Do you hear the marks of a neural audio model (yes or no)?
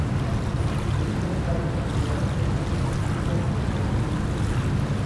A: no